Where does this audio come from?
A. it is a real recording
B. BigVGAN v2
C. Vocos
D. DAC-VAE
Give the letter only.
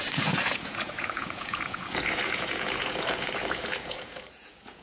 C